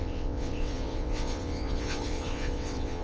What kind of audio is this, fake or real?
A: fake